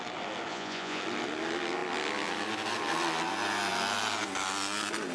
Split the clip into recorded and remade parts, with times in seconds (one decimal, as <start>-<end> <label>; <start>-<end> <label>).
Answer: 0.0-0.5 recorded; 0.5-1.0 remade; 1.0-5.1 recorded